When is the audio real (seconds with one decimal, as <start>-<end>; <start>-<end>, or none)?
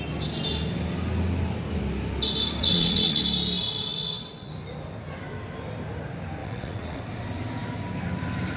0.0-2.6; 3.2-3.9; 4.5-6.4; 7.0-8.6